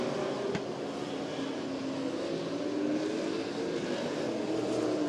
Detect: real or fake real